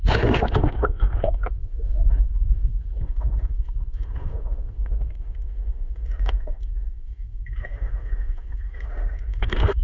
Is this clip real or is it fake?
fake